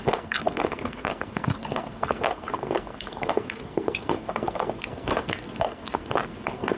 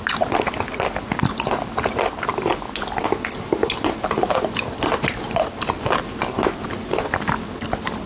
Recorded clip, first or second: second